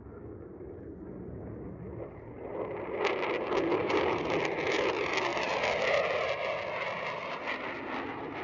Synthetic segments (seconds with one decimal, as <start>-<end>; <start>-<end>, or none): 3.7-4.2